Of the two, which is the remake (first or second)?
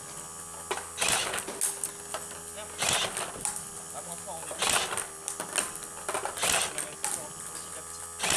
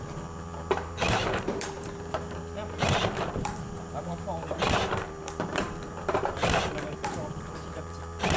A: second